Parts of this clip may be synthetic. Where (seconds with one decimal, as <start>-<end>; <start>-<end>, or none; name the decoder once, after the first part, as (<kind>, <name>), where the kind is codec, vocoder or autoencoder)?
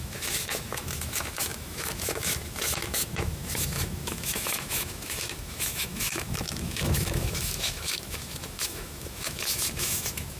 0.0-10.4 (autoencoder, DAC-VAE)